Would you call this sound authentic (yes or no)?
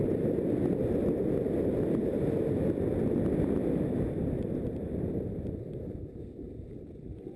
yes